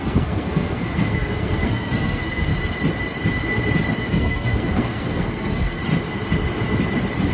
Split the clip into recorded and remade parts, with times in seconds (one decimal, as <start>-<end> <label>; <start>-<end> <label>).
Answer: 0.0-2.5 remade; 2.5-4.0 recorded; 4.0-5.8 remade; 5.8-7.3 recorded